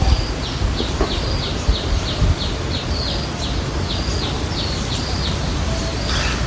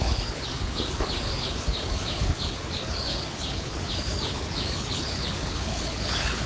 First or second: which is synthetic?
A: second